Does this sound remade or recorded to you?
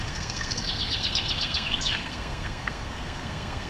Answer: remade